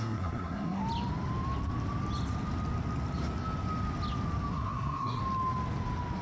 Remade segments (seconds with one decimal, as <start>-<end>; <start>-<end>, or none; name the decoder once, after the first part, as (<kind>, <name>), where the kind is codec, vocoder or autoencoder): 0.0-0.8 (codec, SNAC); 4.5-5.2

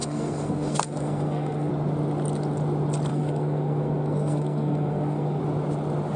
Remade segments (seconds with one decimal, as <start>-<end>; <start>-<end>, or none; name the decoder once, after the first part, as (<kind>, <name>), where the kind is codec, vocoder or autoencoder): 0.0-1.7 (codec, SNAC); 3.1-5.4

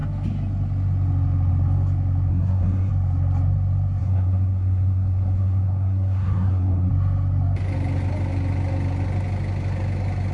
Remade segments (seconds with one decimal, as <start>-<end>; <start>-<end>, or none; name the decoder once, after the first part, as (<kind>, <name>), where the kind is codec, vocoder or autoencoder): 2.3-2.9 (codec, SNAC); 4.0-6.9

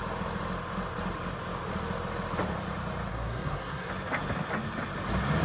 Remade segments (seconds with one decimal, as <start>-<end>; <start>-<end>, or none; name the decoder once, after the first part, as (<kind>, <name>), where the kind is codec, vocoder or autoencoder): 3.1-3.9 (codec, SNAC)

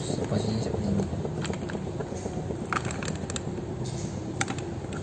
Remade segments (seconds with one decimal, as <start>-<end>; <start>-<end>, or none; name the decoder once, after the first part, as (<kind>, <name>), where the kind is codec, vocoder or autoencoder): none

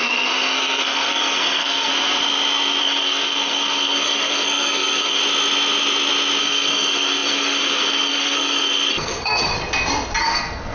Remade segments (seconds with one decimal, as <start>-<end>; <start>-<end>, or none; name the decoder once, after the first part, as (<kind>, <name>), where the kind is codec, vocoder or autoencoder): 0.0-1.9 (codec, SNAC); 2.8-5.2; 6.4-9.5; 10.2-10.7

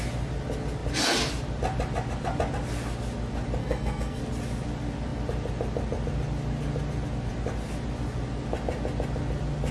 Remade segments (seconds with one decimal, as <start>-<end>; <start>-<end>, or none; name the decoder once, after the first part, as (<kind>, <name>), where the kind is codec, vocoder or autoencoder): 3.6-4.2 (codec, SNAC)